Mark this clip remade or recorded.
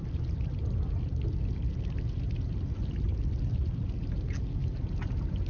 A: recorded